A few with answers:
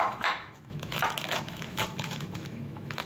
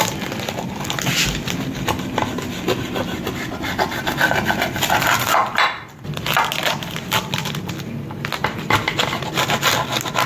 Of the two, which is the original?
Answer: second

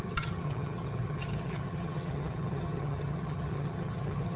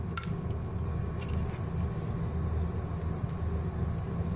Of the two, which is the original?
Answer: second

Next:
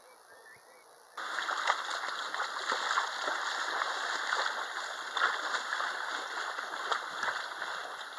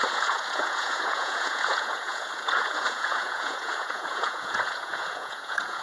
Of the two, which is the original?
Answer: first